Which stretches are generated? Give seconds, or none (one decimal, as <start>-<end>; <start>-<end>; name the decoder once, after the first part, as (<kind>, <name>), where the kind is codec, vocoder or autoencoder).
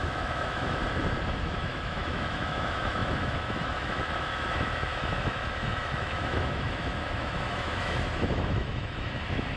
0.0-0.8 (autoencoder, DAC-VAE); 1.3-9.6